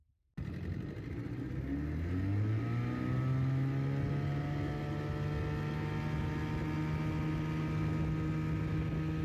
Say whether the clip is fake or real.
real